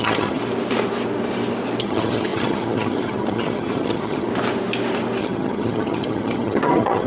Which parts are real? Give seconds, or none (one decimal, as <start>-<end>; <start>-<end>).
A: 0.4-1.8; 4.3-5.2

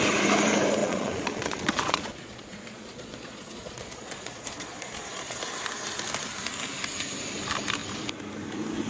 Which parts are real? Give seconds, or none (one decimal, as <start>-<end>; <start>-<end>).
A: 0.0-0.8; 5.4-8.9